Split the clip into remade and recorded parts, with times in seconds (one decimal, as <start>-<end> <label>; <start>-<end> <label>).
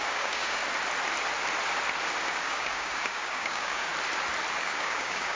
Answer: 0.0-0.6 remade; 0.6-2.2 recorded; 2.2-3.9 remade; 3.9-4.6 recorded; 4.6-5.3 remade